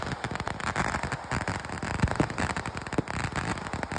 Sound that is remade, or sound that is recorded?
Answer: recorded